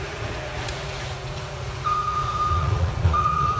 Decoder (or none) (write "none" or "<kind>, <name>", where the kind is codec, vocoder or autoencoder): vocoder, Vocos